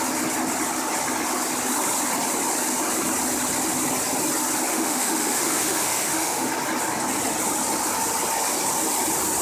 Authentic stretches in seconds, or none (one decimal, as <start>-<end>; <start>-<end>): 0.0-4.7; 6.5-9.4